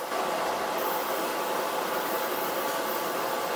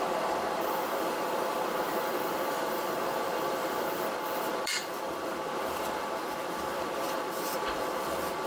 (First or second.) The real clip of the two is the first